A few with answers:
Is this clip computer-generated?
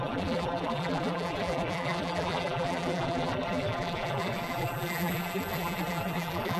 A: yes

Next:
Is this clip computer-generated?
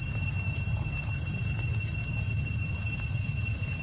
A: yes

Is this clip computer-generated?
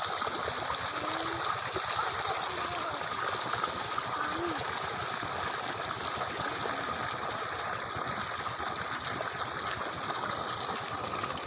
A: no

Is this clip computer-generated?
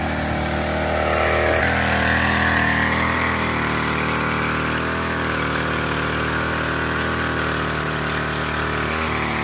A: no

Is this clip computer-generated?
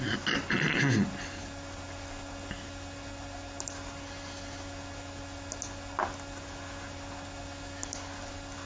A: no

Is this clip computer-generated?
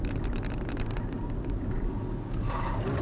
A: no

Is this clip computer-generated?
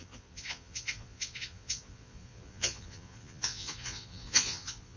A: yes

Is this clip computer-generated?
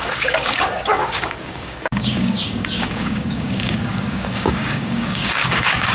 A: yes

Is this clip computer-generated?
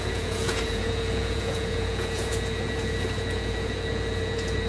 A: yes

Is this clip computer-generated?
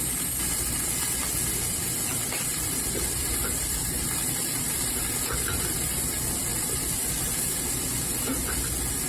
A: yes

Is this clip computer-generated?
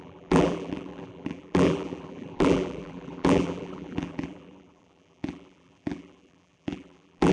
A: yes